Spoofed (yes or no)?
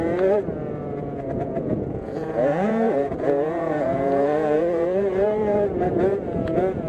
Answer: yes